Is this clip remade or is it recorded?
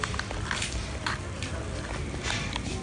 recorded